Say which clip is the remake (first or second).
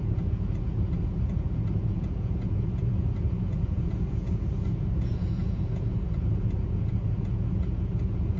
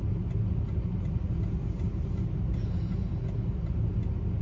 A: first